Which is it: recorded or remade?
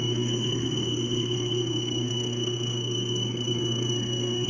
remade